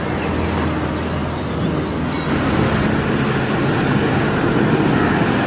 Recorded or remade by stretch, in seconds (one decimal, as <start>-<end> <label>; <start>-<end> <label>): 0.0-5.5 recorded